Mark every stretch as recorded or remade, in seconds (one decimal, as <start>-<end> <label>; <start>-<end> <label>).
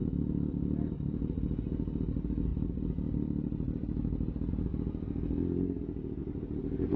0.0-7.0 recorded